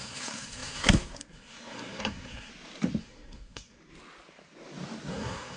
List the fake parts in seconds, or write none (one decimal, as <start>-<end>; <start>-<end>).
0.0-2.5; 3.0-3.8; 5.1-5.6